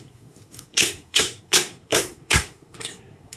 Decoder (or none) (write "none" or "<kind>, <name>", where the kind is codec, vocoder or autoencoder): codec, SNAC